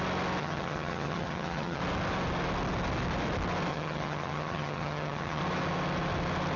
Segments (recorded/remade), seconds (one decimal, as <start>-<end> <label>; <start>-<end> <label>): 0.0-0.4 recorded; 0.4-1.8 remade; 1.8-3.7 recorded; 3.7-5.4 remade; 5.4-6.6 recorded